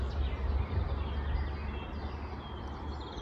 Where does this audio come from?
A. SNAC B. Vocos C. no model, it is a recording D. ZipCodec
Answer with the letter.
C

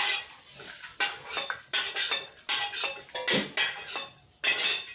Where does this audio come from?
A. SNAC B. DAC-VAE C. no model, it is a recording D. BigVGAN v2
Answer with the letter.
C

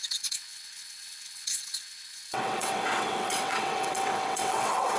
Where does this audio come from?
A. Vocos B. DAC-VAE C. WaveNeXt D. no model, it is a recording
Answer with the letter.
C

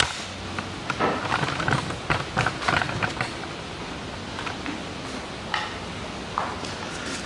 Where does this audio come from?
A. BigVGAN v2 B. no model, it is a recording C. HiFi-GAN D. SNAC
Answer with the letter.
B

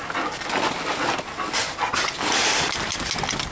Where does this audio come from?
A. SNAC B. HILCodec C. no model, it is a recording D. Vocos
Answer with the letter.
C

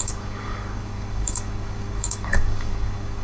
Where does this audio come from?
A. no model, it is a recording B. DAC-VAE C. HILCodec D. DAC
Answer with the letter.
D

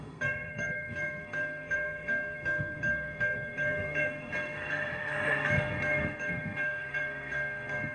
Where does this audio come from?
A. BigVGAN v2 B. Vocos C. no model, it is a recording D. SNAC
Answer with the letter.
D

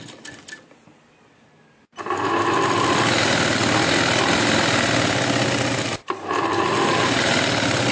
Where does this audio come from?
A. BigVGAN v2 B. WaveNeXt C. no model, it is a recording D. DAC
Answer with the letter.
C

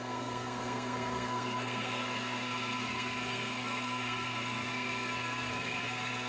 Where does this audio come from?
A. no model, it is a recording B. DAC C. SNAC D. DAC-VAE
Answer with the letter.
C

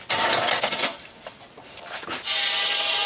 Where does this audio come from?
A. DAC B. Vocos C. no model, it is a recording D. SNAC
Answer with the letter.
C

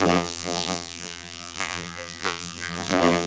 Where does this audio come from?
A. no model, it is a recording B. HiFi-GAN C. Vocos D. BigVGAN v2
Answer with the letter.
D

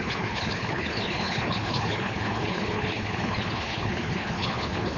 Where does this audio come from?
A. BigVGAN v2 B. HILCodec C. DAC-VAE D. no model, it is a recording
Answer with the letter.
B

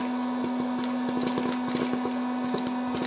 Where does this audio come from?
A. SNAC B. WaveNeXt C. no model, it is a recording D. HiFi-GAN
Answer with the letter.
C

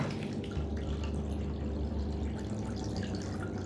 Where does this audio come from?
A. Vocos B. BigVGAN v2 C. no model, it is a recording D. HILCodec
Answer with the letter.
C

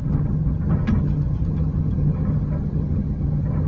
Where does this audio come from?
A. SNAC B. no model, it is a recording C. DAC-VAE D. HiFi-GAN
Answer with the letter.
D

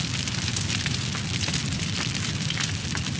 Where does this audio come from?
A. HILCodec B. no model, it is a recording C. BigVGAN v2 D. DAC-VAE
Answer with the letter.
C